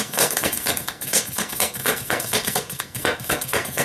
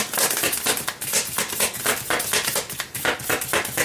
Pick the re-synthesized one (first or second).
first